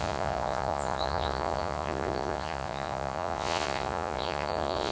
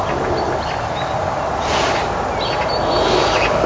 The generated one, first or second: first